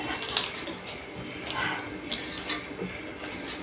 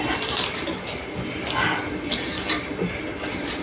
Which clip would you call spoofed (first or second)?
second